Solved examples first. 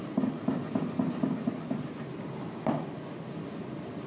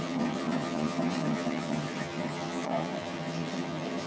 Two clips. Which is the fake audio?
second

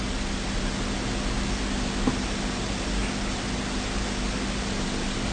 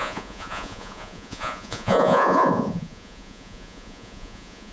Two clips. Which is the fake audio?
second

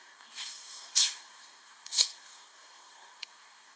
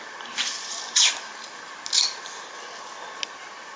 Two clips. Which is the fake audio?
first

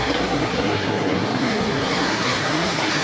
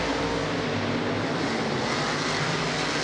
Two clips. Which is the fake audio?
first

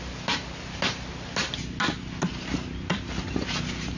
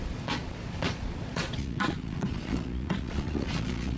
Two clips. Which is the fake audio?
second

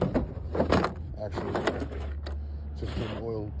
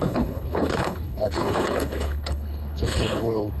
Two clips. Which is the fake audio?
second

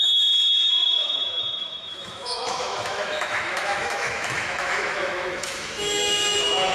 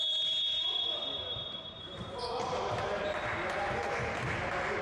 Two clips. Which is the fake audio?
first